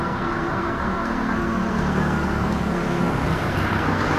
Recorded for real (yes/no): no